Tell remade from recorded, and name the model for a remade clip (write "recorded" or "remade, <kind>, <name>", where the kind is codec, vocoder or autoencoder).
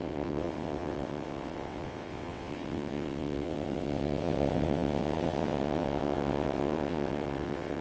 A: remade, vocoder, WaveNeXt